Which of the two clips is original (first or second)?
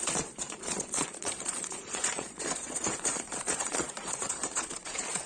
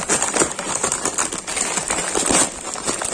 second